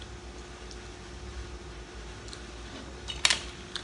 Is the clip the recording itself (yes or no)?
yes